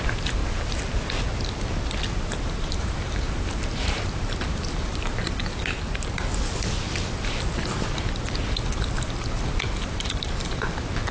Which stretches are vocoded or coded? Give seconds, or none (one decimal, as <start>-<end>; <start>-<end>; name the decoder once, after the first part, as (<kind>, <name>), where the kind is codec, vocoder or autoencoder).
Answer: 0.0-0.4 (vocoder, BigVGAN v2); 2.5-5.5; 8.5-11.1